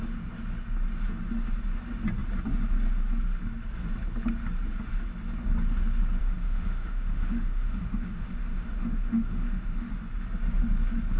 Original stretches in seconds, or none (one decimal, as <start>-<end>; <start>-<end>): 0.0-6.2; 9.9-11.2